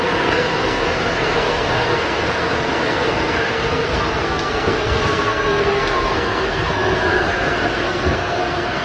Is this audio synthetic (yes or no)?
yes